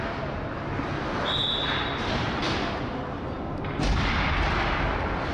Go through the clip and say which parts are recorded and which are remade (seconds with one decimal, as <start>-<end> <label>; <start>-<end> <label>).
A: 0.0-5.3 recorded